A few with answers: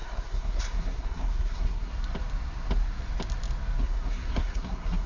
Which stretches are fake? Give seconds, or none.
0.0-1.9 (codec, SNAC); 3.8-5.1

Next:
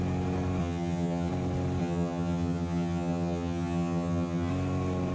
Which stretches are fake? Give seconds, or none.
0.6-1.3 (vocoder, HiFi-GAN); 1.8-4.5

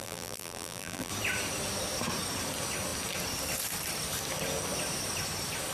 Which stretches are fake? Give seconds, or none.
0.0-1.1 (vocoder, BigVGAN v2)

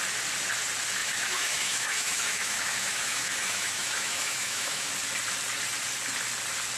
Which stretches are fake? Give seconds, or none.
1.0-4.9 (autoencoder, DAC-VAE)

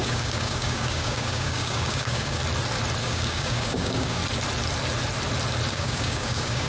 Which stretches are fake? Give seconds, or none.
0.0-2.4 (codec, DAC); 3.0-4.2; 5.7-6.7

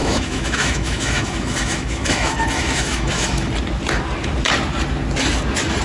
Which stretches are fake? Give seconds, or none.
0.0-3.5 (autoencoder, DAC-VAE)

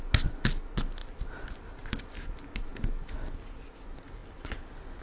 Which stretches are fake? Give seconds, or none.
1.0-2.7 (vocoder, BigVGAN v2)